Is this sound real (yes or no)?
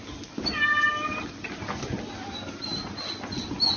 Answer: yes